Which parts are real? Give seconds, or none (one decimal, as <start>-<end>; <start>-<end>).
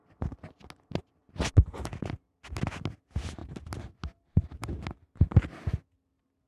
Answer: 0.0-6.5